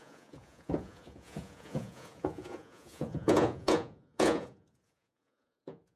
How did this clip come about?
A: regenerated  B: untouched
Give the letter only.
A